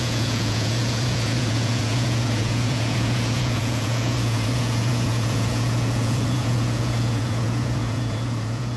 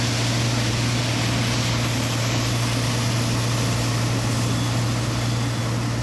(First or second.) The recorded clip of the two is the second